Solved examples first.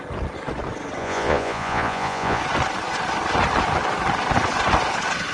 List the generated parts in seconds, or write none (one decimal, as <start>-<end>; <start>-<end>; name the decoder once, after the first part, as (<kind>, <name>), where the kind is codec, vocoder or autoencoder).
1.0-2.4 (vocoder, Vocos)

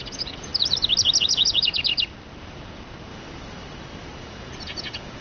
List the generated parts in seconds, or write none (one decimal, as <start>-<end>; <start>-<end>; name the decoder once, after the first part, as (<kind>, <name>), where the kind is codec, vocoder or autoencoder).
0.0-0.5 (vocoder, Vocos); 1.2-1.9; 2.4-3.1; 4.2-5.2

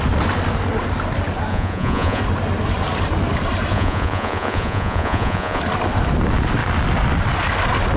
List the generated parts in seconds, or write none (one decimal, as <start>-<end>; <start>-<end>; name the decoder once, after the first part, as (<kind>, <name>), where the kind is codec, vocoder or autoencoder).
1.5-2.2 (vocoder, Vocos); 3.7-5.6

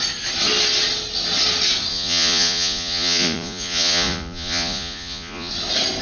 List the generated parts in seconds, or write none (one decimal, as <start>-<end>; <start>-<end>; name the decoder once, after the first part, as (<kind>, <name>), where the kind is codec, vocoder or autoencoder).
1.9-5.5 (vocoder, Vocos)

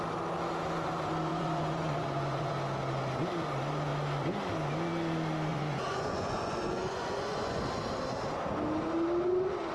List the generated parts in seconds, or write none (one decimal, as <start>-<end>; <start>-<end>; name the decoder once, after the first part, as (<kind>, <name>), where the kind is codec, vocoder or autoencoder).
1.3-2.5 (vocoder, Vocos); 5.5-7.6

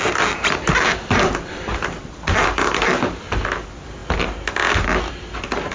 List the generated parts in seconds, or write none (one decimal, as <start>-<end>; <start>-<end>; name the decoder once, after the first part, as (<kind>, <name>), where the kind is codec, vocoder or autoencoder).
none

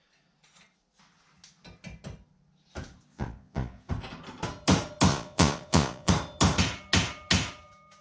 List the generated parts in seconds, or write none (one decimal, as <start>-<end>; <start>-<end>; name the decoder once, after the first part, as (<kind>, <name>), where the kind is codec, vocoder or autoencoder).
3.1-3.9 (vocoder, Vocos); 5.1-6.1